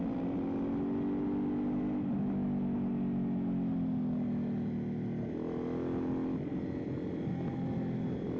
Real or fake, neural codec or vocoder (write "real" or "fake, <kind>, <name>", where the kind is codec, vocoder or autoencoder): real